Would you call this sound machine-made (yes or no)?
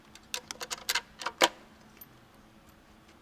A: no